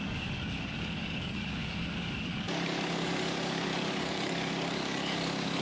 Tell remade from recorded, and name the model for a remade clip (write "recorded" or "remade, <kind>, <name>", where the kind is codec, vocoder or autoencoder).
remade, codec, DAC